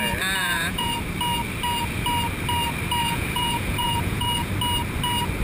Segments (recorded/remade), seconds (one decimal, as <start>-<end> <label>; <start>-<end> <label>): 0.0-0.4 recorded; 0.4-1.0 remade; 1.0-3.0 recorded; 3.0-4.5 remade; 4.5-5.4 recorded